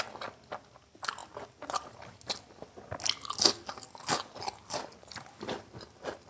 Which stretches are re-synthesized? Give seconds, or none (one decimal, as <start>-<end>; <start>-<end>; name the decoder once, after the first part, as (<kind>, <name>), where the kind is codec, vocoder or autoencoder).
none

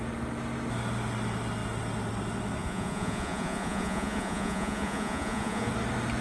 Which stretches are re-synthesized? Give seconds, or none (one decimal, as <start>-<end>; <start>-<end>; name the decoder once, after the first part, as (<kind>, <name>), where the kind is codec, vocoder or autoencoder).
2.6-5.7 (vocoder, Vocos)